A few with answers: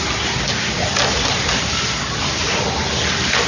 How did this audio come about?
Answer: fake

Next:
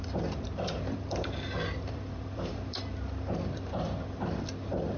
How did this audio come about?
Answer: fake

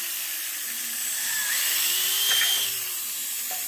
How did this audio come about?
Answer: fake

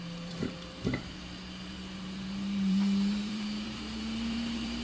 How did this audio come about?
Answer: fake